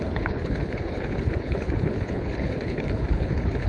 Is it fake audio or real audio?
fake